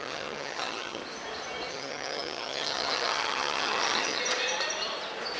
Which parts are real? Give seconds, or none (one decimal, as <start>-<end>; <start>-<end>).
1.0-1.7; 4.2-5.4